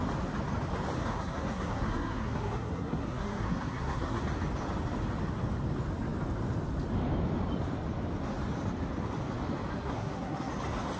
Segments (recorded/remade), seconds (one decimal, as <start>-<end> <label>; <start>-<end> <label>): 0.0-1.0 recorded; 1.0-4.2 remade; 4.2-9.7 recorded; 9.7-10.5 remade; 10.5-11.0 recorded